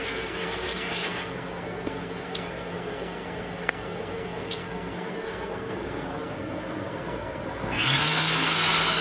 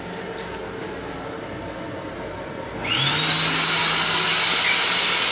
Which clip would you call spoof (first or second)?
first